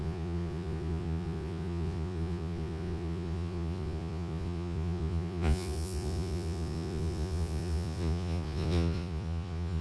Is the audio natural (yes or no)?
no